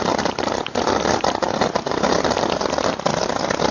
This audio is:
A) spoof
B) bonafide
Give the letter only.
B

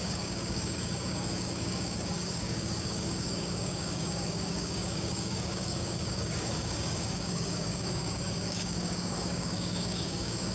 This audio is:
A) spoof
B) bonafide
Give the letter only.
A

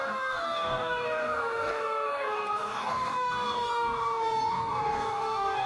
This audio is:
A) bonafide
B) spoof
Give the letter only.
B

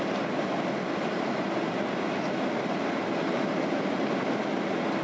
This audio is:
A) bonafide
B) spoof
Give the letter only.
A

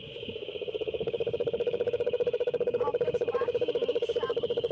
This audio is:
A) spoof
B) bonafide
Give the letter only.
A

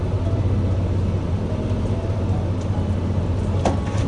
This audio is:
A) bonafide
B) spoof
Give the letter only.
A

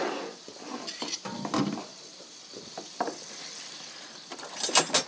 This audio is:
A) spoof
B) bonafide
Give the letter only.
B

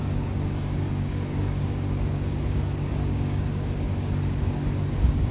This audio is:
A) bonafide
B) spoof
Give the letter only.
B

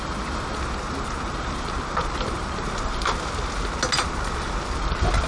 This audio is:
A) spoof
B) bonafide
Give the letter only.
B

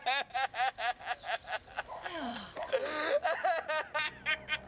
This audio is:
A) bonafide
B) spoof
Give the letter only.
A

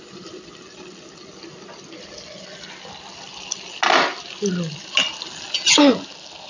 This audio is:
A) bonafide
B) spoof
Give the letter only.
A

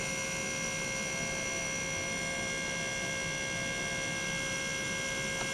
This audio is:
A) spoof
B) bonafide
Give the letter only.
B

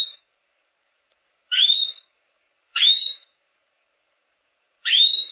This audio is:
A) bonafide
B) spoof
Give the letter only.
B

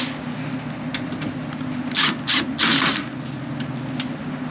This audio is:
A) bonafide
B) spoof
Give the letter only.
A